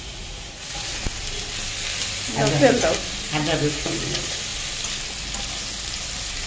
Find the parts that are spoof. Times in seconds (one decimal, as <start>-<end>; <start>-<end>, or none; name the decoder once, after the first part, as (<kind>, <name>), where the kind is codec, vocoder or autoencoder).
0.0-0.9 (vocoder, Vocos); 3.7-4.5